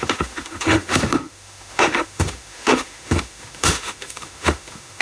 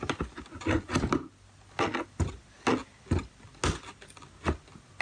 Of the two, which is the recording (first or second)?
second